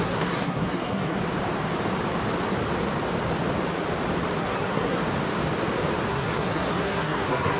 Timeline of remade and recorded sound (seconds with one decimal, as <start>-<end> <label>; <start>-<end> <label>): 0.0-1.2 remade; 1.2-4.4 recorded; 4.4-5.0 remade; 5.0-6.1 recorded; 6.1-7.6 remade